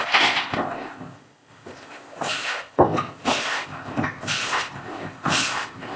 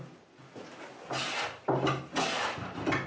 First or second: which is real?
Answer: second